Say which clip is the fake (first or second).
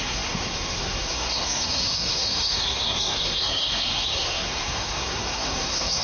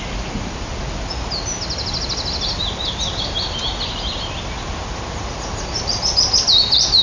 first